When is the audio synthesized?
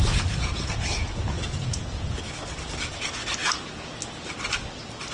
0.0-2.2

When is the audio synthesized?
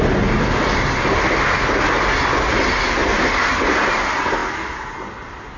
none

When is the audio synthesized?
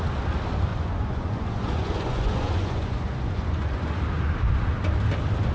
0.7-4.0